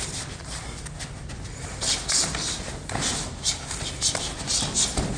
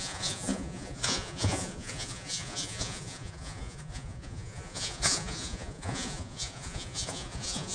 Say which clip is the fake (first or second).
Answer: second